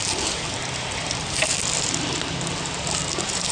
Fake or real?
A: real